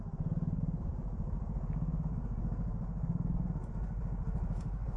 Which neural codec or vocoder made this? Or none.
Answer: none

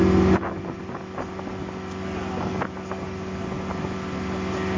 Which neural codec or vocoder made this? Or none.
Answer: none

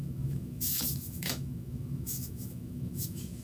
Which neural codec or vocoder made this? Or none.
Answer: autoencoder, DAC-VAE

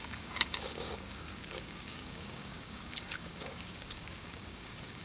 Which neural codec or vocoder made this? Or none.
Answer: codec, DAC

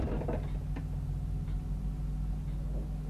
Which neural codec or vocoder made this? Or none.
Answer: none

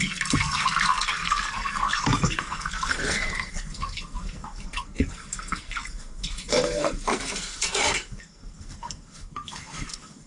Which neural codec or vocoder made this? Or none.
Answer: codec, SNAC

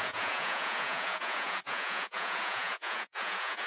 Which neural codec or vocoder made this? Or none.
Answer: vocoder, Vocos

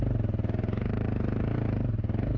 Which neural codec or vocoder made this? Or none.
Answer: none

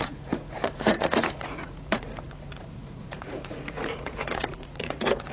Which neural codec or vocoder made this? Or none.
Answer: vocoder, Vocos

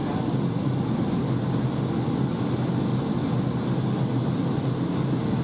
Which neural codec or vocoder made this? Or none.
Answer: none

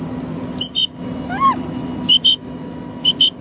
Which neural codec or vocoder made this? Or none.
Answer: none